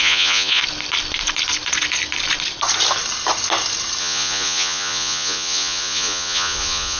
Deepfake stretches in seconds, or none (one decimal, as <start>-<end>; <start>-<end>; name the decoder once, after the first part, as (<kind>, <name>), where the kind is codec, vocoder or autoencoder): 0.0-0.6 (vocoder, Vocos); 4.0-7.0